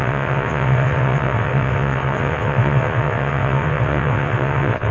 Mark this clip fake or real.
fake